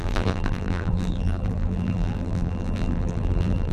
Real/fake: fake